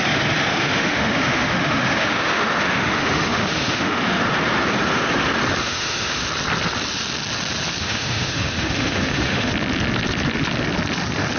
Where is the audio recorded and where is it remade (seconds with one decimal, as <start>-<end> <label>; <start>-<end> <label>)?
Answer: 0.0-0.5 recorded; 0.5-4.2 remade; 4.2-5.6 recorded; 5.6-6.2 remade; 6.2-7.8 recorded; 7.8-9.5 remade; 9.5-11.4 recorded